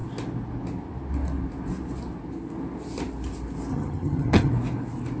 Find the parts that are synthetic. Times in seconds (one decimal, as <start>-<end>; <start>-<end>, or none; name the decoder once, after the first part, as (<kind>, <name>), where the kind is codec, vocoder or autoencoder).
3.7-4.5 (vocoder, HiFi-GAN)